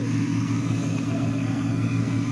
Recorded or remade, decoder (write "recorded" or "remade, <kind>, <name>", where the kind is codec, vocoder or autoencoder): remade, codec, SNAC